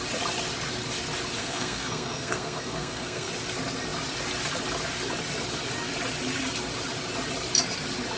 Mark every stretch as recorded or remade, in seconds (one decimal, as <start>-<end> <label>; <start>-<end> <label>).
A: 0.0-1.4 recorded; 1.4-3.3 remade; 3.3-8.2 recorded